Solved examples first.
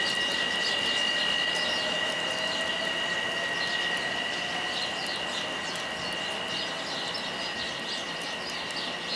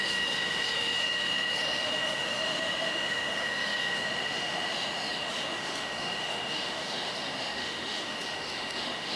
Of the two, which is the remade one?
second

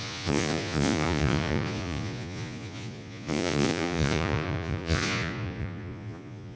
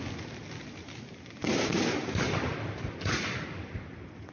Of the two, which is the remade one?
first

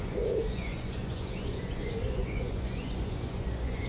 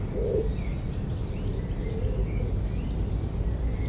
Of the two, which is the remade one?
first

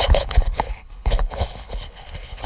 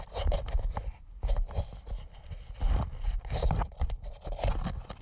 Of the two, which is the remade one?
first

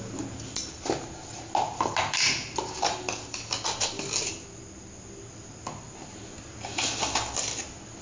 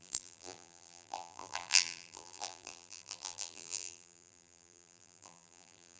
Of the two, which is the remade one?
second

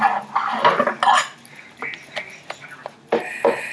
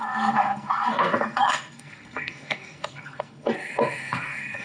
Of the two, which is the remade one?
second